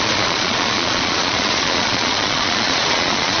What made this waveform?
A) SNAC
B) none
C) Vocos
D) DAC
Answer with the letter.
C